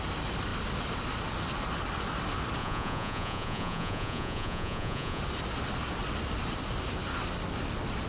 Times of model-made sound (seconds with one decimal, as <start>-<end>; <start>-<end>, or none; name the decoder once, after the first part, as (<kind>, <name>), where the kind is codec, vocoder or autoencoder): 2.6-5.2 (vocoder, Vocos)